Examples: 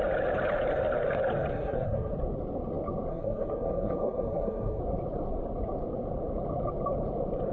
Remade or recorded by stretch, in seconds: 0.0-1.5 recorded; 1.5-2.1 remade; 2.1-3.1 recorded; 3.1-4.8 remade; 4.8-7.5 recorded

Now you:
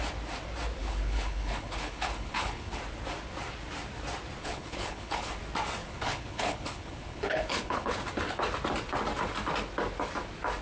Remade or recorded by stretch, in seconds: 0.0-0.8 recorded; 0.8-2.8 remade; 2.8-4.4 recorded; 4.4-5.3 remade; 5.3-5.8 recorded; 5.8-8.0 remade; 8.0-10.6 recorded

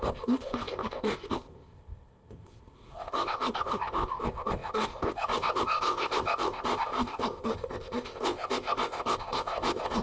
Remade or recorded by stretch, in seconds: 0.0-10.0 remade

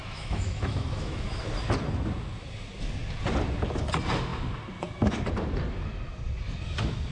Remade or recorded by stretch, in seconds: 0.0-1.4 remade; 1.4-7.1 recorded

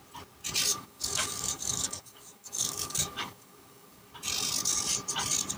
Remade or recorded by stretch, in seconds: 0.0-0.7 recorded; 0.7-4.1 remade; 4.1-5.6 recorded

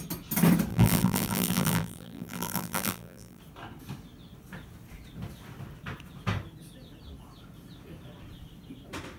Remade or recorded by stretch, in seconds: 0.0-0.7 recorded; 0.7-3.4 remade; 3.4-9.2 recorded

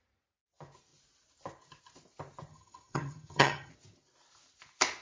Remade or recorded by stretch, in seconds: 0.0-2.5 recorded; 2.5-3.7 remade; 3.7-5.0 recorded